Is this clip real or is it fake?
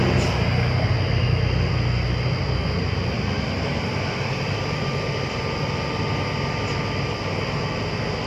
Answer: real